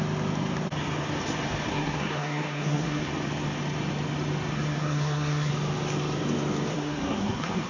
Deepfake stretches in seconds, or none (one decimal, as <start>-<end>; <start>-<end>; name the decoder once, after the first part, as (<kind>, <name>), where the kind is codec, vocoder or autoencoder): 1.7-3.1 (codec, SNAC); 4.5-5.5; 6.7-7.7